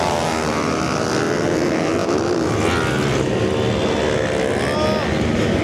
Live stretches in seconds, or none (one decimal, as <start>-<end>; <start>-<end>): 0.0-5.6